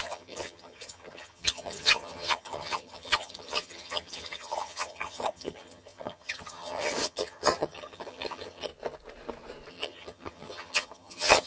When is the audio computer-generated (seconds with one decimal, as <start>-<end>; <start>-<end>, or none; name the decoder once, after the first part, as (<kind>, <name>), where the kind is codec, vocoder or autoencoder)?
0.0-8.7 (vocoder, HiFi-GAN); 9.7-11.5